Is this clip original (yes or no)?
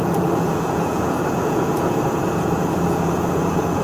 no